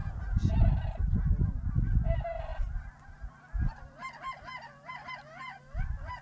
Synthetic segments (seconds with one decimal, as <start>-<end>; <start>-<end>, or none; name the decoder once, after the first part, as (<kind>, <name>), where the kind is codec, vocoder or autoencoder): 2.5-5.2 (vocoder, BigVGAN v2)